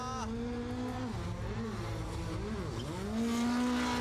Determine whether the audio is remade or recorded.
recorded